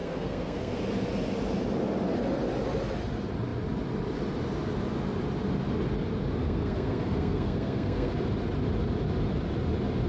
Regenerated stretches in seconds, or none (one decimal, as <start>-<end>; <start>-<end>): 0.0-0.8; 6.4-8.1